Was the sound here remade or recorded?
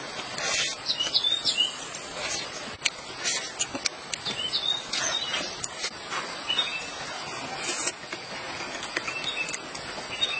recorded